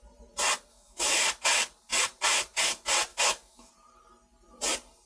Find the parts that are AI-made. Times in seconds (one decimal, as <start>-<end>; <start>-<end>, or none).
0.7-1.2; 3.1-3.7